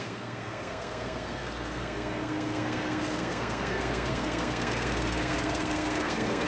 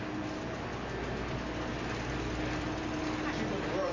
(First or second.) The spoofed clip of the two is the first